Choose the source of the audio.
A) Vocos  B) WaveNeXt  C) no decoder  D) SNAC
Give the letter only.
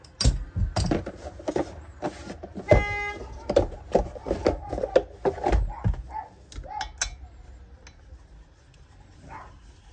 C